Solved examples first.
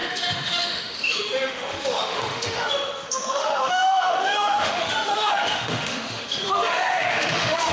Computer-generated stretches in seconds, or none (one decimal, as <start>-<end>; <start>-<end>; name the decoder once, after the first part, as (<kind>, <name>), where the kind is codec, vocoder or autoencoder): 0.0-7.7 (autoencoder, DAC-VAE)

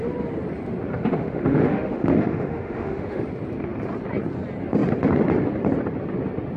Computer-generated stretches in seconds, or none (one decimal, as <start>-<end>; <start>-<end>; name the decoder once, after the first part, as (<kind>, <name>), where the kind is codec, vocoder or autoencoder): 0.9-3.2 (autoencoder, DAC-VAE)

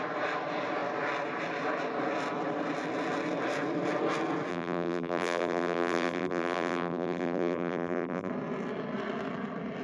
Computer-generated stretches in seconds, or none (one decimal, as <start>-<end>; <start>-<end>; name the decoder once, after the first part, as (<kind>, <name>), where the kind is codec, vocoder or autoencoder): 4.5-8.3 (vocoder, BigVGAN v2)

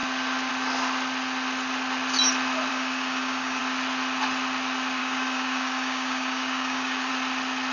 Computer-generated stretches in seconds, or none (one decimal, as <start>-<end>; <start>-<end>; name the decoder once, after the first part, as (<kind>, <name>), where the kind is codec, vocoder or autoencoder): 2.7-3.6 (codec, DAC); 5.0-7.1

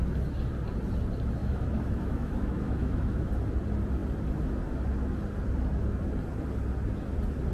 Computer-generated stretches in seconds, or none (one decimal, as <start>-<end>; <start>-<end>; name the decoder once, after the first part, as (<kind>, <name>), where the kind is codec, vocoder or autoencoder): 1.4-3.3 (autoencoder, DAC-VAE)

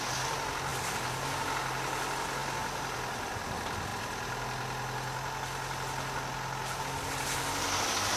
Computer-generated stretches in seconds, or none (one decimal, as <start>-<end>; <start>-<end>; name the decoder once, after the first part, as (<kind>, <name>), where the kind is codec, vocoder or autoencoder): 2.4-3.3 (vocoder, BigVGAN v2)

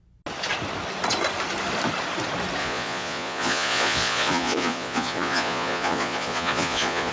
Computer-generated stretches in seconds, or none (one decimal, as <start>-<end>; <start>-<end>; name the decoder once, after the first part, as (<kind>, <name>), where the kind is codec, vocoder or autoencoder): 2.6-7.1 (vocoder, Vocos)

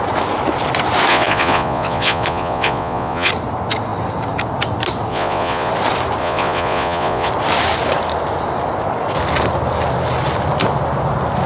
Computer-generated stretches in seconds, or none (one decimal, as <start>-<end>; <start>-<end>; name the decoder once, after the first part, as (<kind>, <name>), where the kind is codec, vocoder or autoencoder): 1.1-3.3 (vocoder, Vocos); 5.1-5.7; 6.2-7.3